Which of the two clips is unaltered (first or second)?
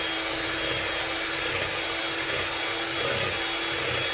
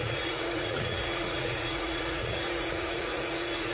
first